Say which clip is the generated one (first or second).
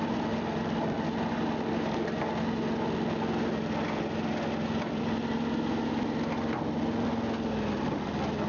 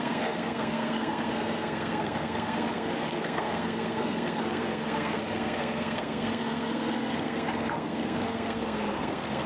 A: second